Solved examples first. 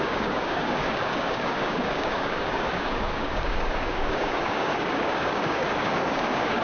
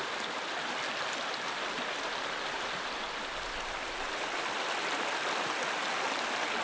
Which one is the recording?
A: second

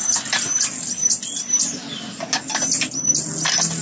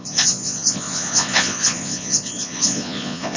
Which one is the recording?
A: first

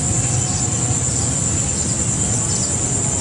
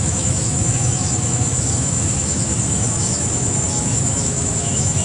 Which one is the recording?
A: first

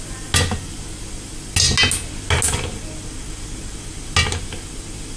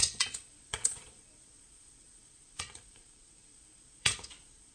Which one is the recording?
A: first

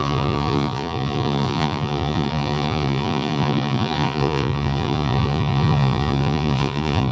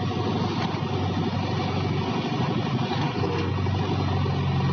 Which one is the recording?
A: second